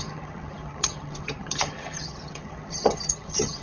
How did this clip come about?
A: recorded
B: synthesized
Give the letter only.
B